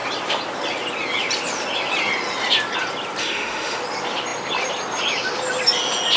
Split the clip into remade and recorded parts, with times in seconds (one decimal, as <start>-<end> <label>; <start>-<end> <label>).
0.0-3.2 recorded; 3.2-3.8 remade; 3.8-6.2 recorded